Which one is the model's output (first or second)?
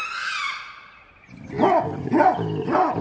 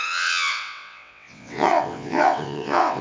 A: second